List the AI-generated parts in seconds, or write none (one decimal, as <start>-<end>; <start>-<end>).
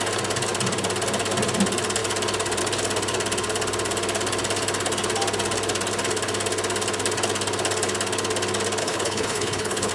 8.8-9.9